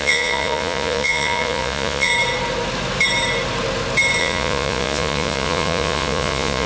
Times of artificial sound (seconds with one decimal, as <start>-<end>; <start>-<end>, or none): 0.0-2.1; 4.2-6.7